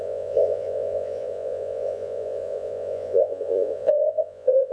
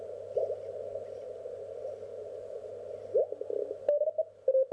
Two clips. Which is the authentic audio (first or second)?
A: second